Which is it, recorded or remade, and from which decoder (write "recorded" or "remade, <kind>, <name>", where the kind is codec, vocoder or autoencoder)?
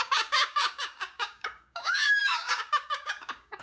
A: remade, codec, DAC